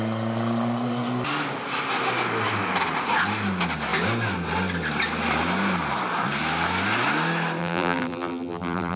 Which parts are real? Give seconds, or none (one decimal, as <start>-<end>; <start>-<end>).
0.0-7.6